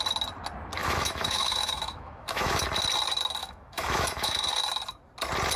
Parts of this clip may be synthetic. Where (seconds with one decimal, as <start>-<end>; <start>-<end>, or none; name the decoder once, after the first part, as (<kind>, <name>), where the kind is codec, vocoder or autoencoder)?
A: 0.8-2.6 (autoencoder, DAC-VAE); 3.4-4.5